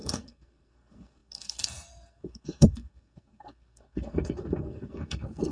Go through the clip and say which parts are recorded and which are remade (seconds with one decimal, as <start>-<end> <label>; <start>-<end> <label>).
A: 0.0-5.5 remade